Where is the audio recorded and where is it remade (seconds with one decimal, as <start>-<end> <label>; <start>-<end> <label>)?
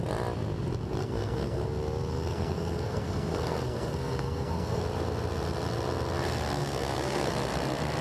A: 0.0-1.0 recorded; 1.0-1.6 remade; 1.6-2.1 recorded; 2.1-4.8 remade; 4.8-6.6 recorded; 6.6-7.3 remade; 7.3-8.0 recorded